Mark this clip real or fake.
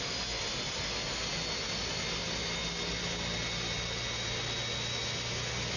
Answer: real